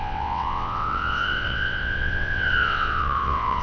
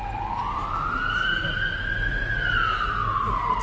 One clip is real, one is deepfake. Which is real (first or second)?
second